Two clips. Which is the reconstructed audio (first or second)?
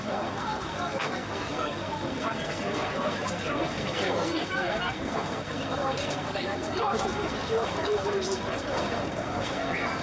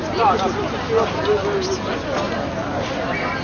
first